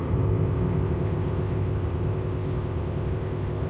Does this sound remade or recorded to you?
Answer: remade